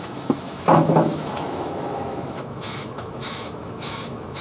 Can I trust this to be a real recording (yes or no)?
no